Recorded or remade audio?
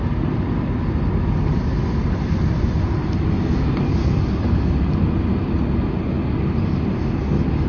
recorded